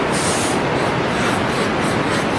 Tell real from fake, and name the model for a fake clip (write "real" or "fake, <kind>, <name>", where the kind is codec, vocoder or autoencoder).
real